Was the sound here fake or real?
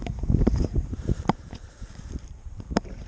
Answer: fake